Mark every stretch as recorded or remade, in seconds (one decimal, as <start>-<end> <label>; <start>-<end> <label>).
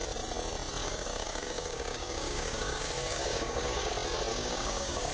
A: 0.0-0.8 recorded; 0.8-3.9 remade; 3.9-4.3 recorded; 4.3-5.1 remade